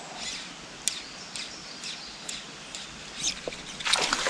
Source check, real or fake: real